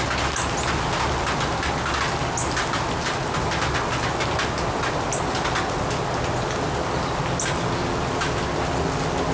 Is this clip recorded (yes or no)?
yes